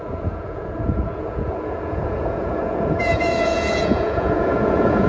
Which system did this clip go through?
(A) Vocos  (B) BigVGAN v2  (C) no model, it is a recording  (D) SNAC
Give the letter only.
A